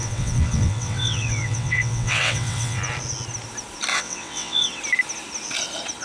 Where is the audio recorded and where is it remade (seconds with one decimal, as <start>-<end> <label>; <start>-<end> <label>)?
0.0-2.8 remade; 2.8-3.9 recorded; 3.9-4.8 remade; 4.8-6.0 recorded